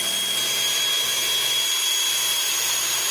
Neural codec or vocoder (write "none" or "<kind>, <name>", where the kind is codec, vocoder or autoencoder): none